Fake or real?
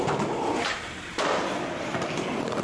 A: fake